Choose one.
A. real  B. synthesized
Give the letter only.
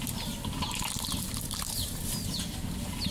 A